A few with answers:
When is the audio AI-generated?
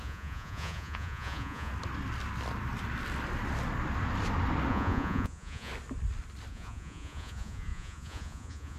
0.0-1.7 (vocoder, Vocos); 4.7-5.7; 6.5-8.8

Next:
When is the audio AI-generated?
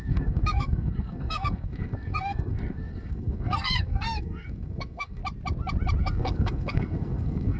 0.0-5.2 (codec, SNAC); 6.0-7.6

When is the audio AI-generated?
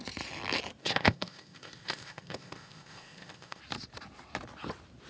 0.8-3.6 (codec, ZipCodec)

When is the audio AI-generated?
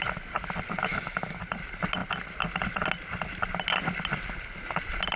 0.9-1.4 (autoencoder, DAC-VAE)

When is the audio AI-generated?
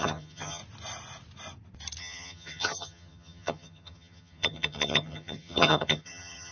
0.0-0.6 (vocoder, HiFi-GAN); 2.0-6.5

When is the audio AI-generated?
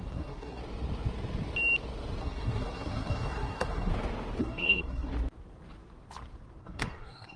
0.0-0.6 (codec, SNAC); 2.2-3.9; 4.4-5.1; 6.6-7.4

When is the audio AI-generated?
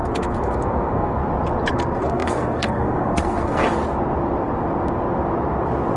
0.0-1.2 (codec, SNAC); 1.7-3.8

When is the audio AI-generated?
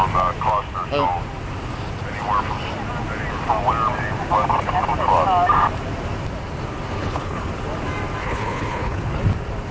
7.0-7.5 (codec, HILCodec); 8.2-9.2